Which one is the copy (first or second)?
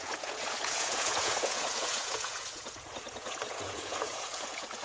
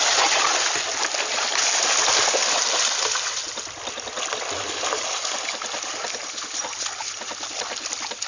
first